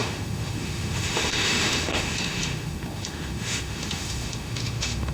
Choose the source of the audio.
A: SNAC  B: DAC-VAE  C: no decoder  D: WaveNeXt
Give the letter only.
B